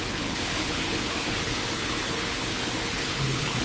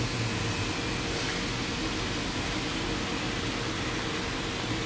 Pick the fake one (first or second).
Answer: first